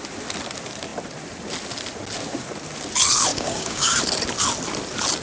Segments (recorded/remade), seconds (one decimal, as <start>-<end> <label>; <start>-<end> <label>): 0.0-3.3 recorded; 3.3-4.0 remade; 4.0-5.2 recorded